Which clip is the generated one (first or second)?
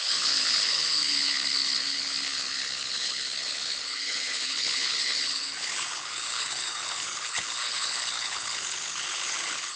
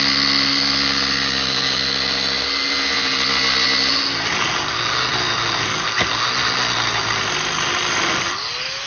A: first